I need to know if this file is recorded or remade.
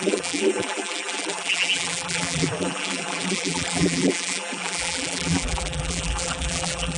remade